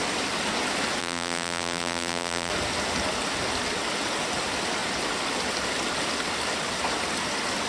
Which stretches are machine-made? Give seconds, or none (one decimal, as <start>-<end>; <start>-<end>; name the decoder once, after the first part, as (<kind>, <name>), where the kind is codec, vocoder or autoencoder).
1.0-2.5 (vocoder, BigVGAN v2)